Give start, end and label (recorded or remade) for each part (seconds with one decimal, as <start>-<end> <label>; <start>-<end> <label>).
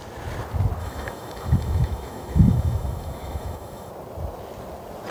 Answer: 0.0-0.8 recorded; 0.8-3.9 remade; 3.9-5.1 recorded